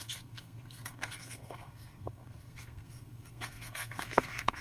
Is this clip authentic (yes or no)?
no